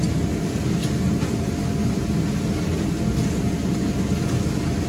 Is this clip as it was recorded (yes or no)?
yes